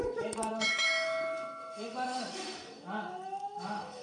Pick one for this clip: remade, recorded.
remade